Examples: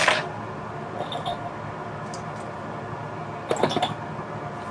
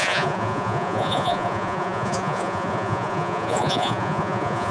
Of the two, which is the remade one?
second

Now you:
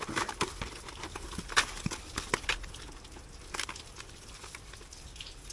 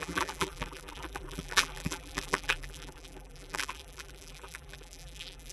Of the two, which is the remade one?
second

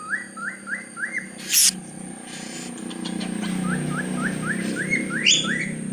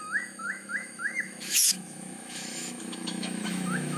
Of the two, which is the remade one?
second